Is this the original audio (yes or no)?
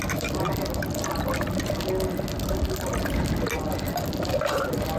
yes